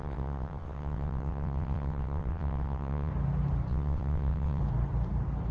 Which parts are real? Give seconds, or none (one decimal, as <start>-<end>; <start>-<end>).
3.1-3.7; 4.6-5.5